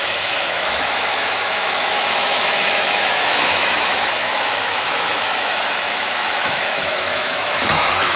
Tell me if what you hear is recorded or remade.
remade